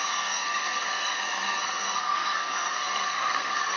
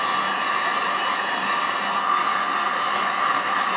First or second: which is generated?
first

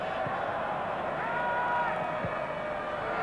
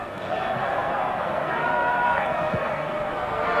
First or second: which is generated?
second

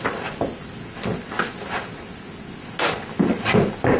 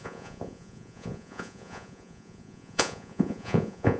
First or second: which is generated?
second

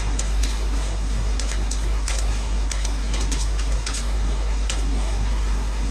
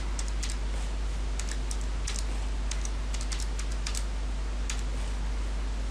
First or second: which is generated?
first